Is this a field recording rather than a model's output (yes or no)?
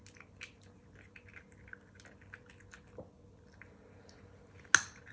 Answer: yes